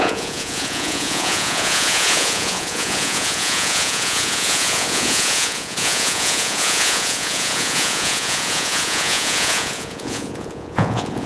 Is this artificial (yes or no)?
yes